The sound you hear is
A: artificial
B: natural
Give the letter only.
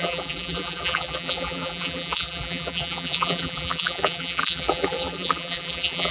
A